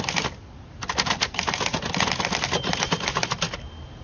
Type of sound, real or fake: real